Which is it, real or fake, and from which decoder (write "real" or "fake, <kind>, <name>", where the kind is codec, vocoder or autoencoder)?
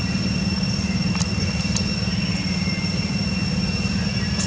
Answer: real